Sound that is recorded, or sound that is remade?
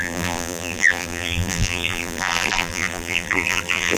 remade